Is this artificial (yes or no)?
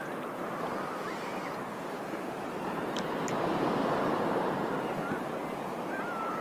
yes